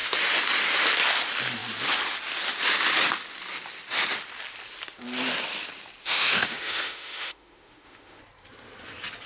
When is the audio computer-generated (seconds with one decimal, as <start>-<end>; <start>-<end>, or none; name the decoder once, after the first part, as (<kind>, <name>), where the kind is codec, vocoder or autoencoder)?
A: 6.0-8.2 (autoencoder, DAC-VAE)